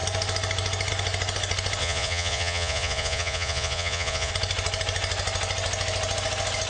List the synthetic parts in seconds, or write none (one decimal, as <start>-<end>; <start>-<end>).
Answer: 1.8-4.3